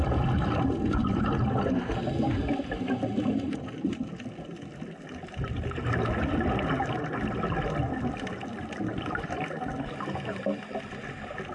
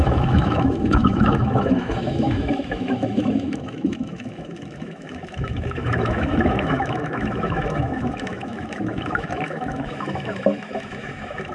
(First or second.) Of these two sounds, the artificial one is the second